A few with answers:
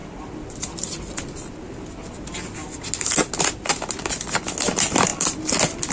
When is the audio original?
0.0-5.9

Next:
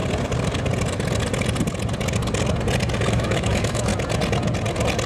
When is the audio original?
0.0-3.1; 3.9-5.1

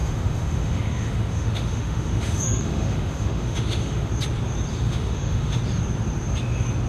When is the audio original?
4.1-4.7; 5.6-6.9

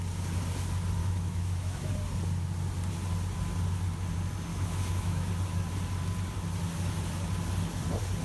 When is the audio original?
0.0-1.0; 1.9-4.5; 5.3-8.2